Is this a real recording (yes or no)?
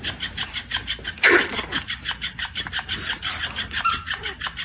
yes